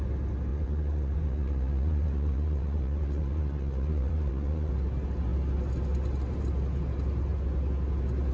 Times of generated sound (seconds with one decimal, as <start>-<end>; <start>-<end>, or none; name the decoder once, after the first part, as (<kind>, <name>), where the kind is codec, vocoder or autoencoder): 0.5-4.7 (vocoder, Vocos)